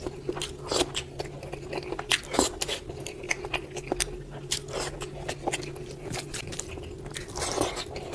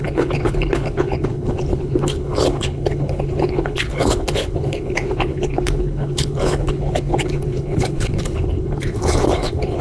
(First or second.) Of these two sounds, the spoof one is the second